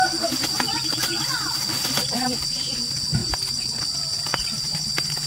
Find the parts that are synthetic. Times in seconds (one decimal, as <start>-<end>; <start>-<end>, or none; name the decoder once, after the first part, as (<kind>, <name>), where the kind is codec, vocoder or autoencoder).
3.2-3.8 (vocoder, BigVGAN v2); 4.3-5.3